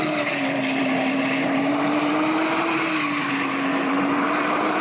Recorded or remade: remade